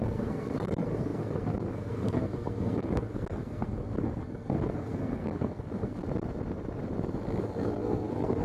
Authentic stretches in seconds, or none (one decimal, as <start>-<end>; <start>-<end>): 6.0-7.4